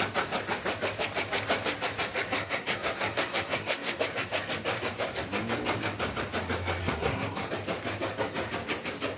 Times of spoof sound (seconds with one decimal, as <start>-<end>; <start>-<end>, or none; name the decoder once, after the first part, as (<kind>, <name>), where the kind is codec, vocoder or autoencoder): 2.4-4.0 (codec, SNAC); 6.8-7.5